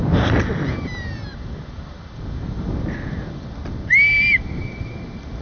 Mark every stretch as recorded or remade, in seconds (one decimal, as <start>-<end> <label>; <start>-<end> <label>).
0.0-1.3 recorded; 1.3-1.9 remade; 1.9-4.3 recorded; 4.3-4.9 remade; 4.9-5.4 recorded